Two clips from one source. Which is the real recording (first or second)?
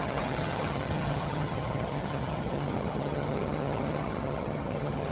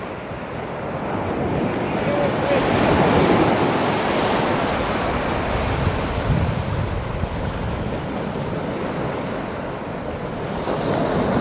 second